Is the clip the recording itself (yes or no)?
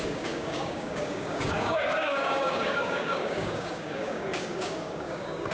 no